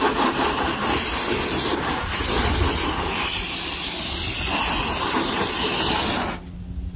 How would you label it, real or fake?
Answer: real